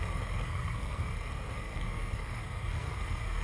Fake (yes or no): yes